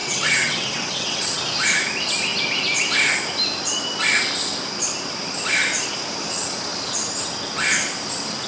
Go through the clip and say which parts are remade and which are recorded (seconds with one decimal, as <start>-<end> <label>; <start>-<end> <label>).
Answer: 0.0-1.4 remade; 1.4-8.5 recorded